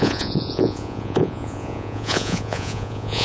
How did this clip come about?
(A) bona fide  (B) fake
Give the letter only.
B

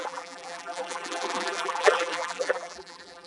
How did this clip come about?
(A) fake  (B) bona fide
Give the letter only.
A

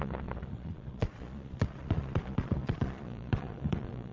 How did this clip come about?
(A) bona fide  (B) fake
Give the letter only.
B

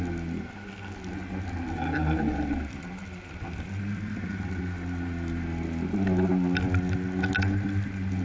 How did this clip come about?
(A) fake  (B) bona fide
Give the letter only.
B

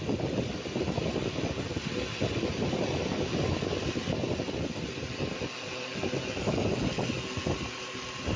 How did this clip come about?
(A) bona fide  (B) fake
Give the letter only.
A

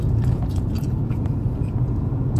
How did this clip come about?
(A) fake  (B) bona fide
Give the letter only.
A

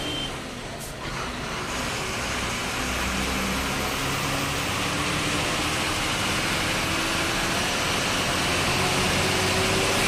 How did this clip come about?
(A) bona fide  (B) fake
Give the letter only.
A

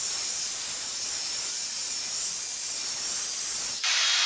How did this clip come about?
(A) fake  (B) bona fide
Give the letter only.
B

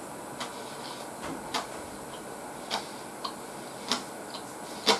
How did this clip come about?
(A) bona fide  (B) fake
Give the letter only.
A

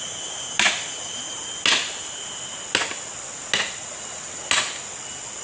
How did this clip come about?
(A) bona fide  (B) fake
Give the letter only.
A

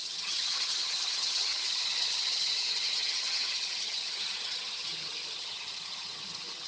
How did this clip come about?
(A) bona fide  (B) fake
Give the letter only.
B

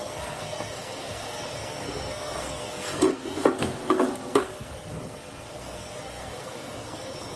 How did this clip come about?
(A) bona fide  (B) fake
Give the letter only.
B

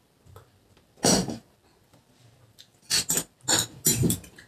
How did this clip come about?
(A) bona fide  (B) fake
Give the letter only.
A